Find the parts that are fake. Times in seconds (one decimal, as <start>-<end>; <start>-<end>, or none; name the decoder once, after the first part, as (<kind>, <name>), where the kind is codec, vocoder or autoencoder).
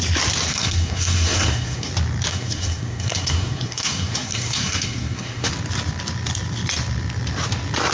0.5-1.9 (codec, SNAC); 2.3-5.5